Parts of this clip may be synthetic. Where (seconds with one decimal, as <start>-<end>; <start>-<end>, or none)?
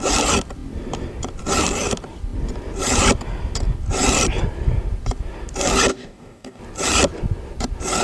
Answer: 5.9-6.6